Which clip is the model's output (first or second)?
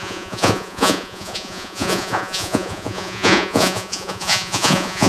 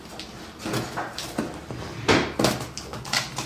first